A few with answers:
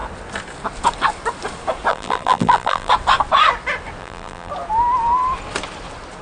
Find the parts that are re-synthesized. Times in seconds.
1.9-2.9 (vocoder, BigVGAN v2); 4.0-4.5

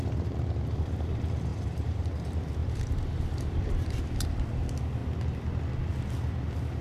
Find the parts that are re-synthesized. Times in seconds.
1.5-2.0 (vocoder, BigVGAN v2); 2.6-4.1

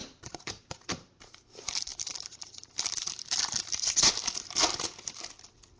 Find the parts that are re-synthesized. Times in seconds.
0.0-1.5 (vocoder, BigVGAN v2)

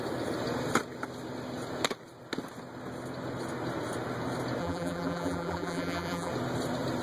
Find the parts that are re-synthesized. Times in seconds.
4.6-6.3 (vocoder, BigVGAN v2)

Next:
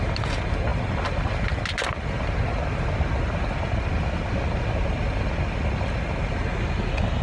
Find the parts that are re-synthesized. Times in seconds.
none

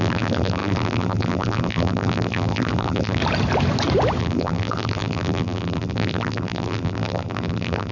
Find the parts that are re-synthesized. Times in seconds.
0.0-3.2 (vocoder, BigVGAN v2); 4.2-7.9

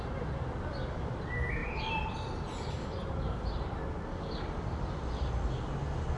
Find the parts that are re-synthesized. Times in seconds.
1.6-5.3 (vocoder, BigVGAN v2)